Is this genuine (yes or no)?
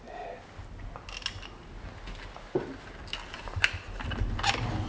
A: yes